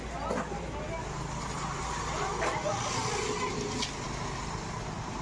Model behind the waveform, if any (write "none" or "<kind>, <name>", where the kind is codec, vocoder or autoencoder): none